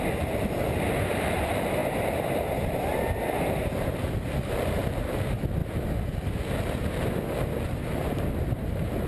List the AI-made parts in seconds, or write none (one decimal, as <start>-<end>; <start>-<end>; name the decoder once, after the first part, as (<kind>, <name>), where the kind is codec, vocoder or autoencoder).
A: 0.0-1.8 (vocoder, BigVGAN v2); 2.6-5.6; 7.8-9.1